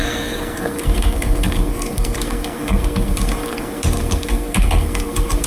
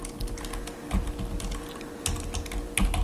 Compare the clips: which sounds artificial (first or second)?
first